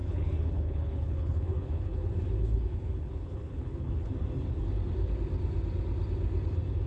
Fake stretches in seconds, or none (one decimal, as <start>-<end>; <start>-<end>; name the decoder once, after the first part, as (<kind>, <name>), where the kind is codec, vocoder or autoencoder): 0.0-4.1 (codec, HILCodec)